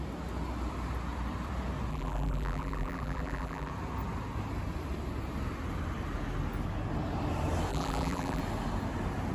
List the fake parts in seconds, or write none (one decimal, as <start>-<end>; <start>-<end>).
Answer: 1.9-3.7; 7.7-8.4